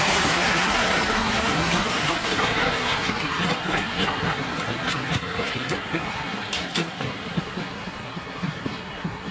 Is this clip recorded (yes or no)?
no